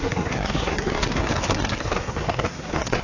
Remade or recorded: remade